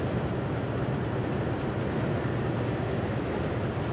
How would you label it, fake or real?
real